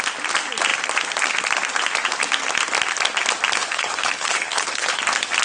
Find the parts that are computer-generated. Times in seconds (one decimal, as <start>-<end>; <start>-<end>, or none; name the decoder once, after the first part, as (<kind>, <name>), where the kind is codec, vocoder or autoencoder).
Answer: 3.6-5.0 (codec, HILCodec)